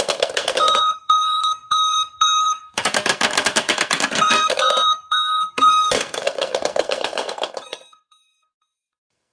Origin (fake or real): fake